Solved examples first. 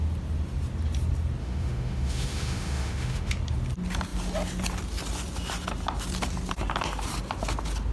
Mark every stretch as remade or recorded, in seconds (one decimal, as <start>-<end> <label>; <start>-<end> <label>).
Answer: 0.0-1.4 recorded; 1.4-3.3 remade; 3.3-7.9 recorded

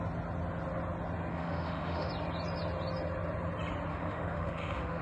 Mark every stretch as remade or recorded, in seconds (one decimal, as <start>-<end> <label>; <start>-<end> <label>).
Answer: 0.0-1.3 recorded; 1.3-2.1 remade; 2.1-3.9 recorded; 3.9-5.0 remade

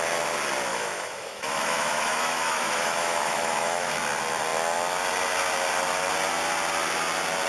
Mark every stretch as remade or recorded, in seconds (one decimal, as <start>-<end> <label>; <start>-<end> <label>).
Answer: 0.0-0.7 recorded; 0.7-3.9 remade; 3.9-7.5 recorded

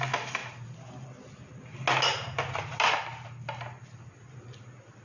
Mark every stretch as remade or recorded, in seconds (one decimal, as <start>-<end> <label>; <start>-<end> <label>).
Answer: 0.0-5.0 recorded

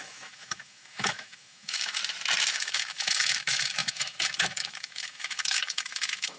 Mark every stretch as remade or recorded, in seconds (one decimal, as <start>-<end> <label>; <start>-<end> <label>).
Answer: 0.0-2.0 remade; 2.0-2.5 recorded; 2.5-6.4 remade